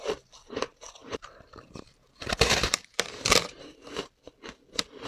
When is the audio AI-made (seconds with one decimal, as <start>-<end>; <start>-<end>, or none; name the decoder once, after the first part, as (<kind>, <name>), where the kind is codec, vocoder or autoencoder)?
1.0-4.1 (vocoder, BigVGAN v2)